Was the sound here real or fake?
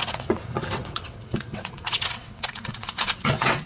fake